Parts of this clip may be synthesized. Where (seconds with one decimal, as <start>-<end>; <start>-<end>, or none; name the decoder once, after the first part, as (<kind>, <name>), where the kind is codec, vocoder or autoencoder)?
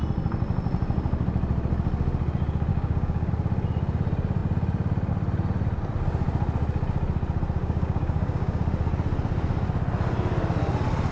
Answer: 2.7-3.3 (codec, DAC); 7.6-8.6